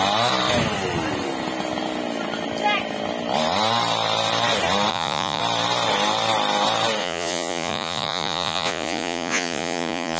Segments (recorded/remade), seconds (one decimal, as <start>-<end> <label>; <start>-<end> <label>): 0.0-4.9 recorded; 4.9-5.4 remade; 5.4-7.0 recorded; 7.0-10.2 remade